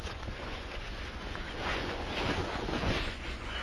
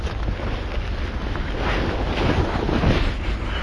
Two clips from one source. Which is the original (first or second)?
second